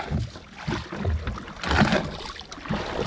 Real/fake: real